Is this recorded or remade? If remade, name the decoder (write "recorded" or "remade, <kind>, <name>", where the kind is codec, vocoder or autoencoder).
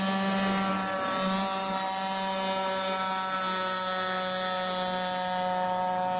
recorded